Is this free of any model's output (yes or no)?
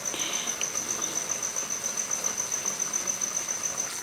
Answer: yes